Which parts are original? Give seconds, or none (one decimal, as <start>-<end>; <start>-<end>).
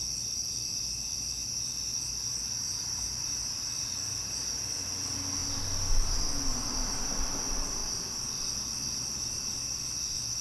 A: 0.0-10.4